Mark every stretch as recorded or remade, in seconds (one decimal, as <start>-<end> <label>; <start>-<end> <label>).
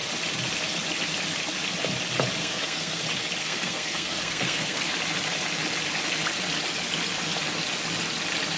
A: 0.0-2.4 recorded; 2.4-3.0 remade; 3.0-3.4 recorded; 3.4-4.9 remade; 4.9-8.6 recorded